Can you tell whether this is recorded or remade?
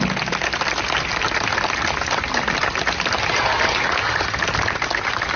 recorded